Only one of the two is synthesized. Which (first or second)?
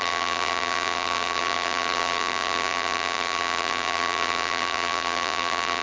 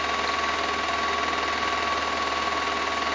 first